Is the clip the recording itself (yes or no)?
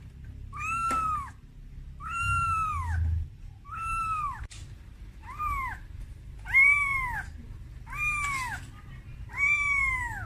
yes